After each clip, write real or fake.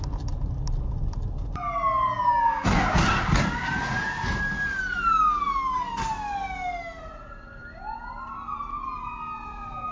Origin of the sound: real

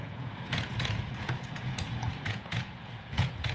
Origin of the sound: fake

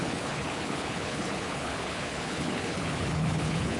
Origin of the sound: fake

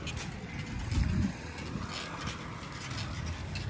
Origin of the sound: real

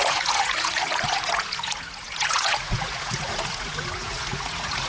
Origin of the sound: fake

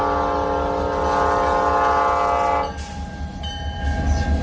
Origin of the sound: real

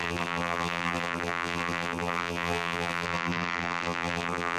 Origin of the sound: fake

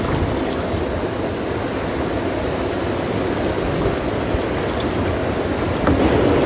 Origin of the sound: real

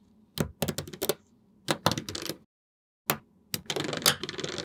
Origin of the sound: real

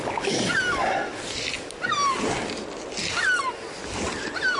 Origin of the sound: real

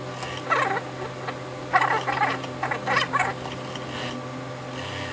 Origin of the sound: real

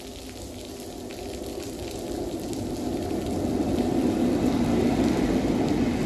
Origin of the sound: real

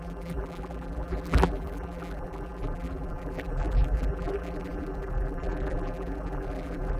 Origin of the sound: fake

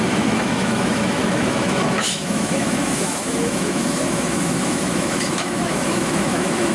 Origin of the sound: fake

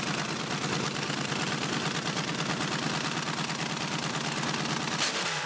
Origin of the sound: real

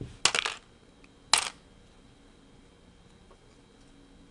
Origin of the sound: real